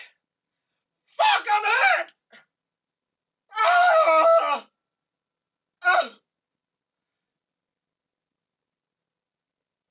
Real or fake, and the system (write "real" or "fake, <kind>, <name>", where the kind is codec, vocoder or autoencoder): real